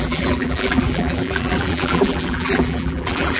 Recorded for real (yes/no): no